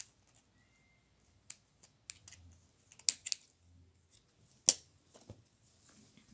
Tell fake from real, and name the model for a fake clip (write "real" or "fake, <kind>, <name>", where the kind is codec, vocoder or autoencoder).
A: real